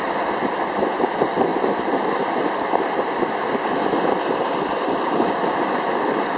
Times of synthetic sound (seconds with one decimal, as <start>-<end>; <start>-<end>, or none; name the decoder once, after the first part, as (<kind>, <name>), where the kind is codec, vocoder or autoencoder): none